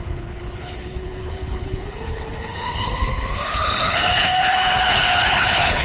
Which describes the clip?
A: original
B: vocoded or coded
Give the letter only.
B